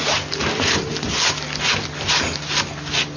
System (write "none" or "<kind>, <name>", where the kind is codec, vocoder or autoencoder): none